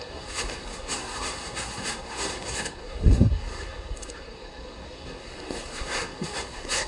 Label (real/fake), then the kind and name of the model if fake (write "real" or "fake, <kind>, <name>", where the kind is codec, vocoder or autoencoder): fake, codec, SNAC